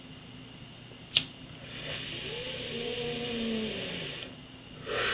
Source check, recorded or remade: recorded